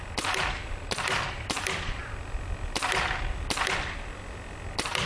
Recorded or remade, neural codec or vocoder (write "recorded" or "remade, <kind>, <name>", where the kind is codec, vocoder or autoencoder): recorded